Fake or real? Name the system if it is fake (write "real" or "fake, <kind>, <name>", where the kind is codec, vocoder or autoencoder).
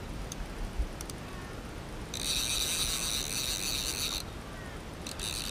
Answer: real